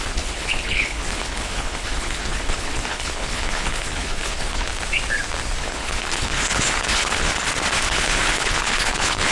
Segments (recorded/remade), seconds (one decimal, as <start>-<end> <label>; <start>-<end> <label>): 0.0-4.7 remade; 4.7-5.6 recorded; 5.6-7.3 remade; 7.3-7.9 recorded; 7.9-9.3 remade